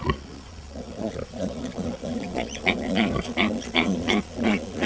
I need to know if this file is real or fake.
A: fake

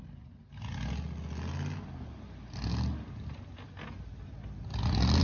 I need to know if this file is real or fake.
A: real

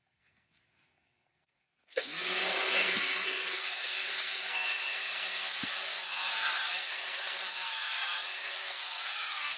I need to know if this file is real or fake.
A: fake